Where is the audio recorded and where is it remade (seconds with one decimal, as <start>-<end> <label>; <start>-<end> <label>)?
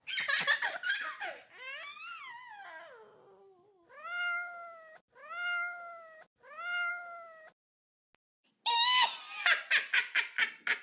0.0-10.8 recorded